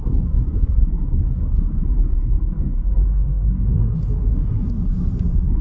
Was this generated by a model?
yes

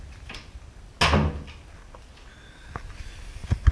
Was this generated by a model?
no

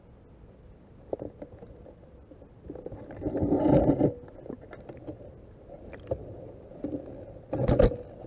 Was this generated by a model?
no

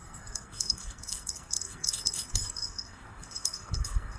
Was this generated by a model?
yes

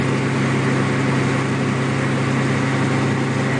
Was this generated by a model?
no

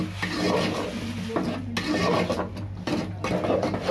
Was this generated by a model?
no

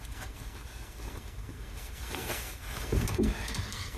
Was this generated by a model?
yes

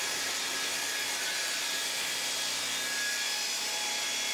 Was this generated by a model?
no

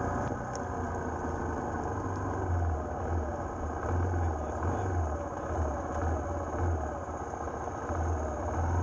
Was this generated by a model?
no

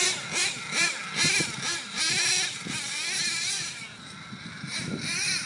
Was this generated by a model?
no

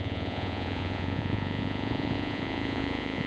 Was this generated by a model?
yes